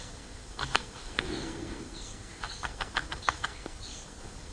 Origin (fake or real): fake